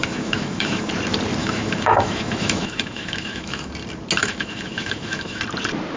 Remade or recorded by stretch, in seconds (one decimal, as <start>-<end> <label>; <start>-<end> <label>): 0.0-0.9 remade; 0.9-1.4 recorded; 1.4-3.7 remade; 3.7-4.2 recorded; 4.2-5.4 remade; 5.4-6.0 recorded